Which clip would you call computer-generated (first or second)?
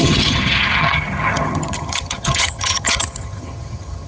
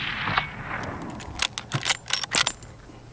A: first